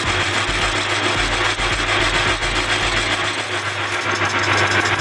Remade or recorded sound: recorded